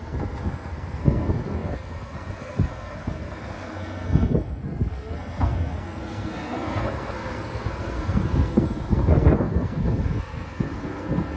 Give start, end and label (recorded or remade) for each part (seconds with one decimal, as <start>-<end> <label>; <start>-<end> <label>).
0.0-11.4 remade